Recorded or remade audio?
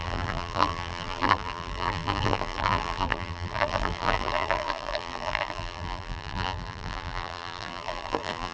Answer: remade